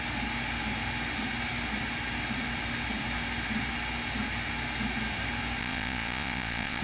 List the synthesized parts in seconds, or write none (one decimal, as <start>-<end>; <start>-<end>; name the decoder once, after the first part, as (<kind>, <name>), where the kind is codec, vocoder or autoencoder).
5.6-6.8 (vocoder, Vocos)